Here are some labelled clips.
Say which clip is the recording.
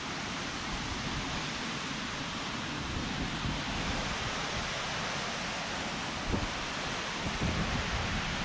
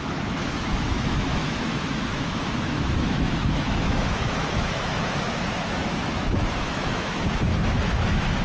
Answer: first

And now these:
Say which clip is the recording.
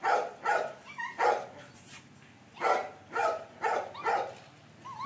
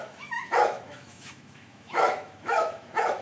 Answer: first